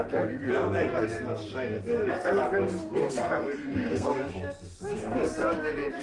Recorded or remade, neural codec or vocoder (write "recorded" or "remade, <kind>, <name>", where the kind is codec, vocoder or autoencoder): remade, codec, SNAC